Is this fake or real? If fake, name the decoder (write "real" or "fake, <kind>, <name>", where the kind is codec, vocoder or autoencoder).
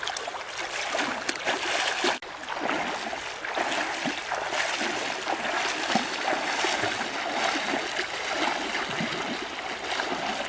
real